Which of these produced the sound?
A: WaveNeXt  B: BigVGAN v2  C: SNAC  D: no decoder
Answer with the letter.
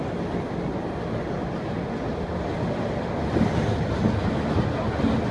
D